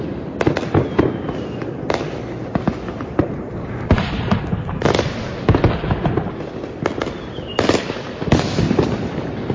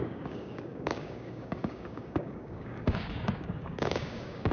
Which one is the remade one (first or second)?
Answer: second